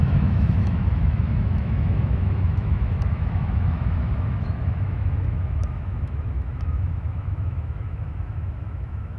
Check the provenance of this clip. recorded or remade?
remade